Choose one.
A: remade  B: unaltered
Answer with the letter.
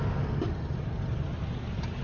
B